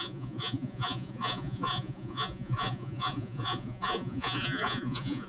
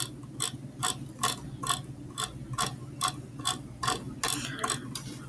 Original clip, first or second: second